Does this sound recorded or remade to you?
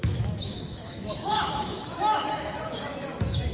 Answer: remade